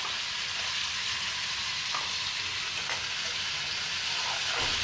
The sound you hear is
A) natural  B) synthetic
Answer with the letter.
A